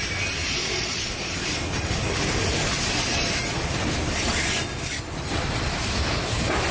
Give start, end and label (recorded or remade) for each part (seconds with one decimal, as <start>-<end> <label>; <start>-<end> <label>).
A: 0.0-0.4 recorded; 0.4-1.3 remade; 1.3-6.7 recorded